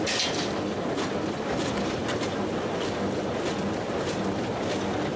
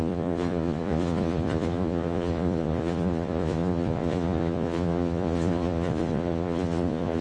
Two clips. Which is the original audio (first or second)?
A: first